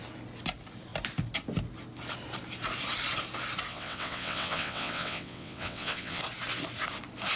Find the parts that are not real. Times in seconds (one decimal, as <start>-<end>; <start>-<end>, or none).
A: 3.7-6.2